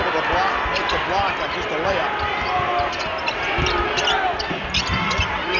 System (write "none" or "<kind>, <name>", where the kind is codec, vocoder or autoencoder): none